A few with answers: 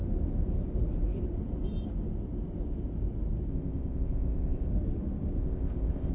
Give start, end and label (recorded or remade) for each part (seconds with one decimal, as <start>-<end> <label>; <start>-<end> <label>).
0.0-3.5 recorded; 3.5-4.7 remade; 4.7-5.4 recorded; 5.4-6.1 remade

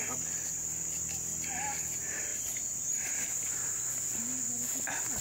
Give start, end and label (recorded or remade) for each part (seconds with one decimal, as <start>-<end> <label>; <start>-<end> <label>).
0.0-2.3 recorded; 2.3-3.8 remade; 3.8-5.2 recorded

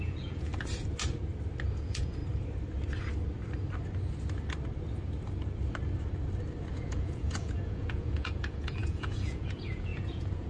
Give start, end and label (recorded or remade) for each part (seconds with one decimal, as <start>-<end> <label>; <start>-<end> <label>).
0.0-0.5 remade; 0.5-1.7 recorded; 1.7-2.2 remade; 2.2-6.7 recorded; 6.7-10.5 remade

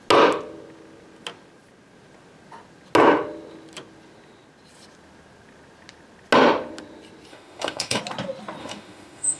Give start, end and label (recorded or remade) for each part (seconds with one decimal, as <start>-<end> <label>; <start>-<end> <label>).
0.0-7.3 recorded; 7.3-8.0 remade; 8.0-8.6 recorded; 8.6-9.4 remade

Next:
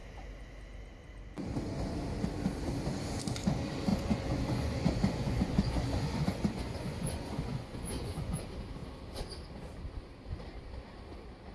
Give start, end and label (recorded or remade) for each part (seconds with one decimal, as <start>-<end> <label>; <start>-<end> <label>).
0.0-3.9 recorded; 3.9-8.4 remade; 8.4-11.5 recorded